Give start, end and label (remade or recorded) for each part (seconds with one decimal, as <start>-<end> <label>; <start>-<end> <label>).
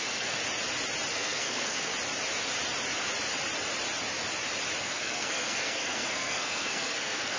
0.0-0.4 remade; 0.4-1.1 recorded; 1.1-1.9 remade; 1.9-4.8 recorded; 4.8-7.4 remade